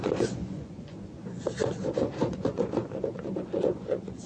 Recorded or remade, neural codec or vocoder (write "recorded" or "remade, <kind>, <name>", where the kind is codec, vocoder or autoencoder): remade, vocoder, Vocos